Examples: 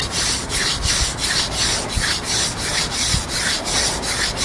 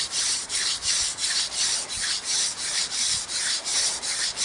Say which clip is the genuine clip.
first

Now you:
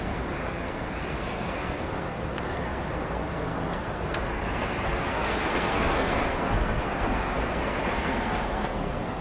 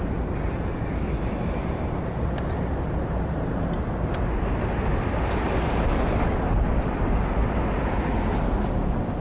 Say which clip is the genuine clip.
second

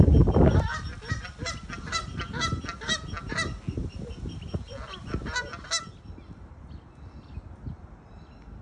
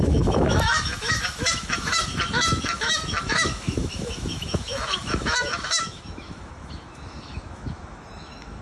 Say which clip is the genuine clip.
first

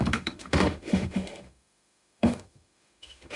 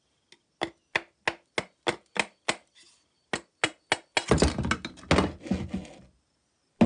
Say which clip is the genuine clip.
second